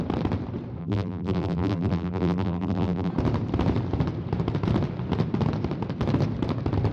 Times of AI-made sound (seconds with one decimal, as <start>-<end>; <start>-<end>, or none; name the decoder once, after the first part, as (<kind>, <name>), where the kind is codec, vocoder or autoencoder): 0.8-3.1 (vocoder, BigVGAN v2)